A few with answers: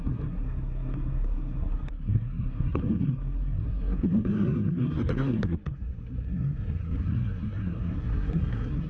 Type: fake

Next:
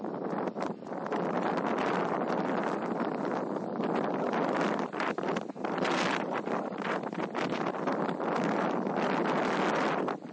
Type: real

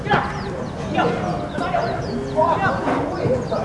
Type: real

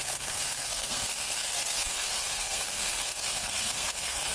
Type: fake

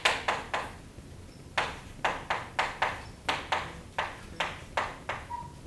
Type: real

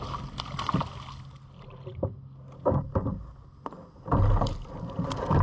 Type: real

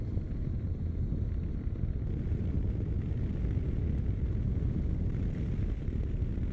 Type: real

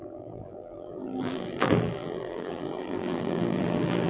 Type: fake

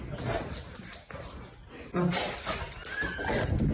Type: real